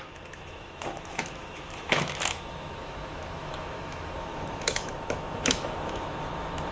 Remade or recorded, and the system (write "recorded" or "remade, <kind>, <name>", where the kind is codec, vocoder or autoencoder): remade, autoencoder, DAC-VAE